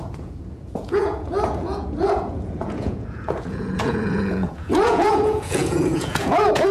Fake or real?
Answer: fake